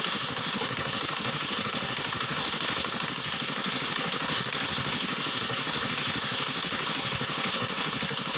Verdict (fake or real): fake